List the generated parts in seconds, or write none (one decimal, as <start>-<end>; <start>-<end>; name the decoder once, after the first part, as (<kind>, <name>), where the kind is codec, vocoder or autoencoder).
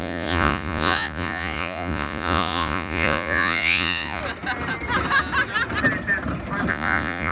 0.0-4.2 (vocoder, Vocos); 6.7-7.3